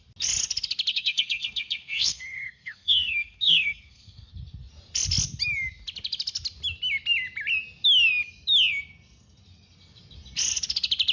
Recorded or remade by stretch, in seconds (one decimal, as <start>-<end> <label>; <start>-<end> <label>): 0.0-0.9 recorded; 0.9-4.3 remade; 4.3-11.1 recorded